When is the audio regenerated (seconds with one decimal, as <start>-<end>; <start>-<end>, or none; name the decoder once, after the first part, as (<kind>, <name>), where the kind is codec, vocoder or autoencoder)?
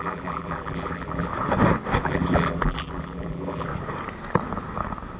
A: 0.0-1.3 (vocoder, BigVGAN v2); 2.0-3.7